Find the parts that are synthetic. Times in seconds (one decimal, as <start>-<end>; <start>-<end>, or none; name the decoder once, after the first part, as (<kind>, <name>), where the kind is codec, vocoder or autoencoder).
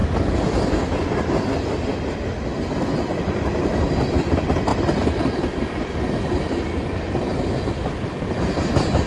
2.6-9.1 (vocoder, BigVGAN v2)